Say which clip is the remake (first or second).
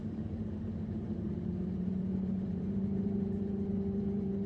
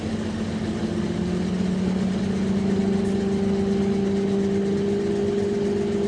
first